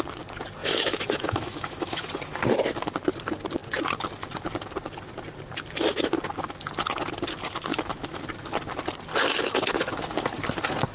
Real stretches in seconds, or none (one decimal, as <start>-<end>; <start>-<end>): 0.0-0.6; 2.1-7.7; 8.2-10.9